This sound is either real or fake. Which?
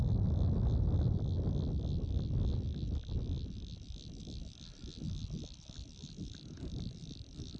real